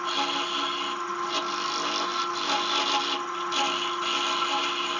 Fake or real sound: real